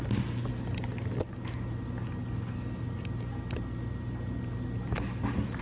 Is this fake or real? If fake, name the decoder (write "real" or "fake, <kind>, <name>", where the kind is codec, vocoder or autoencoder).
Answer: real